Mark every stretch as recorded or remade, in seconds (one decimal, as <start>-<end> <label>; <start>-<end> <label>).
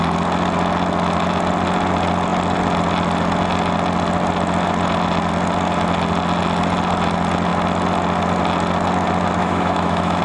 0.0-9.4 recorded; 9.4-10.2 remade